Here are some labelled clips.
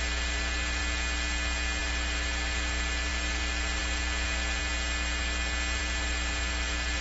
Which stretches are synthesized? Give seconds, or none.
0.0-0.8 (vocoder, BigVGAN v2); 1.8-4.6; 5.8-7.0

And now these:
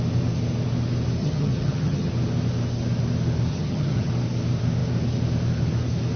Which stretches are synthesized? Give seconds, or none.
1.2-2.1 (vocoder, HiFi-GAN); 3.5-4.1

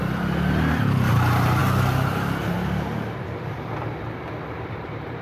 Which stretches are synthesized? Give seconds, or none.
0.0-1.6 (vocoder, BigVGAN v2); 4.5-5.2

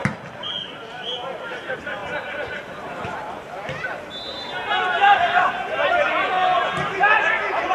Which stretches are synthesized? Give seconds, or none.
none

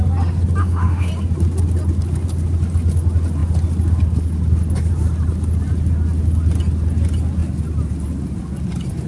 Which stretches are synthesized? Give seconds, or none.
0.6-1.1 (autoencoder, DAC-VAE)

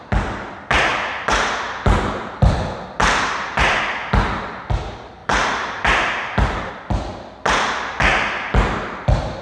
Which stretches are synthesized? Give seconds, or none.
0.9-3.8 (vocoder, BigVGAN v2); 5.2-6.7

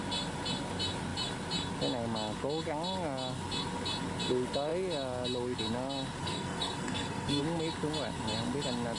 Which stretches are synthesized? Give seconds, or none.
6.2-7.4 (codec, SNAC)

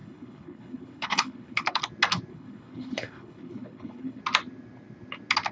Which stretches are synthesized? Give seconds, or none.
0.0-1.8 (codec, HILCodec); 2.3-4.2